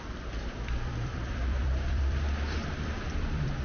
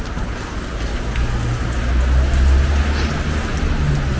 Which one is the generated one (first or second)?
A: first